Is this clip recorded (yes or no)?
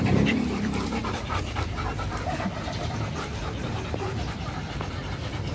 no